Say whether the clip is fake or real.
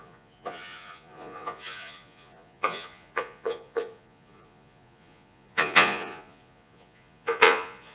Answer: fake